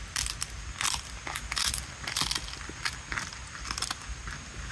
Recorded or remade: recorded